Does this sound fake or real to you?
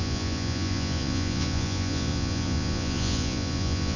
fake